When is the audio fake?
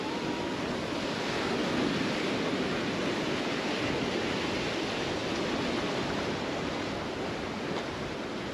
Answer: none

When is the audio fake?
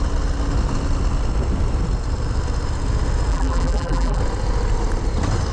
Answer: 3.3-4.2 (vocoder, BigVGAN v2)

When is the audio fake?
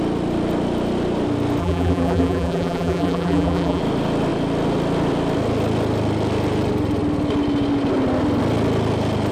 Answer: 1.6-3.8 (vocoder, BigVGAN v2)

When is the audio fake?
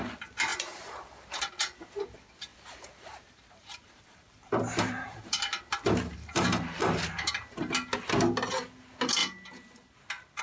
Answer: 0.5-1.5 (vocoder, BigVGAN v2); 2.5-7.3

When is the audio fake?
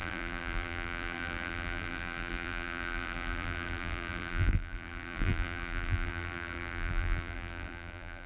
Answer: 0.0-8.3 (vocoder, BigVGAN v2)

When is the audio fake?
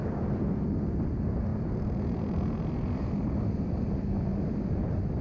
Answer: 0.0-0.6 (vocoder, BigVGAN v2); 1.5-4.6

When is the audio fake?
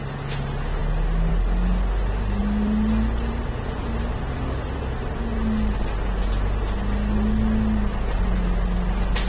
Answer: 2.4-4.7 (vocoder, BigVGAN v2)